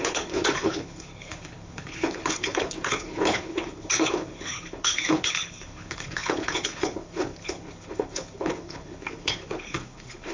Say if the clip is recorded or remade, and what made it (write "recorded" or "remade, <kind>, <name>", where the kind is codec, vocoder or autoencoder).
remade, codec, HILCodec